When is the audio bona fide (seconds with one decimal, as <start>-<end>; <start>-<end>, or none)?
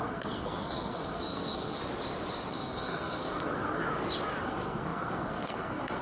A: 1.8-2.5; 3.8-4.4